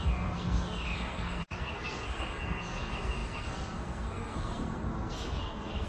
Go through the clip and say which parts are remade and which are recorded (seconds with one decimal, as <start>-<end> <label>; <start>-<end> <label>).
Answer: 0.0-5.9 remade